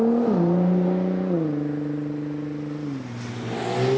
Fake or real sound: real